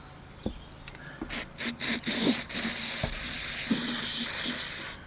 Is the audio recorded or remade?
recorded